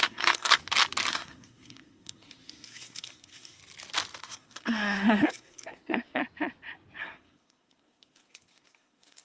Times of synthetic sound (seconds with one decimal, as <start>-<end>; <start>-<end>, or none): 0.0-0.6; 1.1-3.6; 4.2-6.2; 7.0-9.2